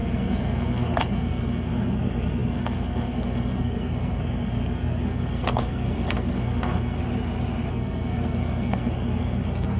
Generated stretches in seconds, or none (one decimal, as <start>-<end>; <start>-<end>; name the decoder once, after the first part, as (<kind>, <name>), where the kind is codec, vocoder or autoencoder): 0.0-7.0 (codec, SNAC); 7.7-9.8